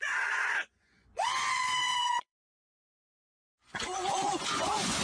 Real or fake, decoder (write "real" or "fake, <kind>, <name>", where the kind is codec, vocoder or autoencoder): fake, vocoder, Vocos